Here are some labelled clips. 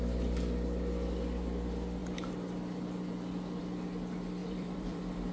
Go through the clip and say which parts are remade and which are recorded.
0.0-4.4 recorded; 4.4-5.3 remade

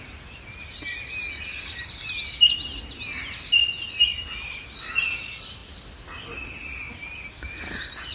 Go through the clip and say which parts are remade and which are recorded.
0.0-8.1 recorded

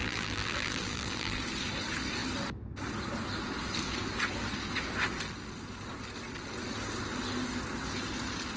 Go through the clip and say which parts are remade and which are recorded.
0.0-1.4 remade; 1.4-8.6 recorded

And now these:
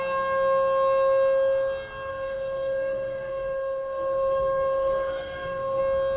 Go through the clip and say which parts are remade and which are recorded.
0.0-2.1 recorded; 2.1-5.8 remade; 5.8-6.2 recorded

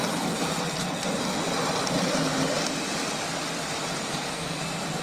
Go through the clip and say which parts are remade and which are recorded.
0.0-4.1 recorded; 4.1-4.6 remade; 4.6-5.0 recorded